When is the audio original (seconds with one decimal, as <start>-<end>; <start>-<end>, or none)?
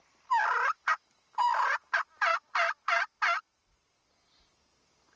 0.0-0.9; 1.7-5.2